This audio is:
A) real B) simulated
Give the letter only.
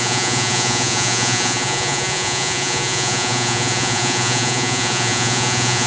B